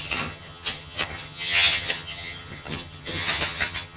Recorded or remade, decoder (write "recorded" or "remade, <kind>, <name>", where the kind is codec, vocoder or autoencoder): remade, vocoder, HiFi-GAN